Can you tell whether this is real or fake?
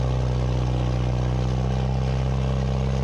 real